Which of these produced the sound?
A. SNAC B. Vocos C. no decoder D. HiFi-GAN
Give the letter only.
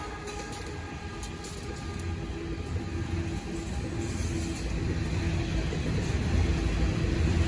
C